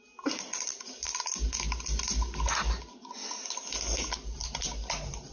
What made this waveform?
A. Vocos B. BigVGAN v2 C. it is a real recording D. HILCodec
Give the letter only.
C